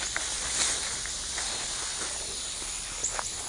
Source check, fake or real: real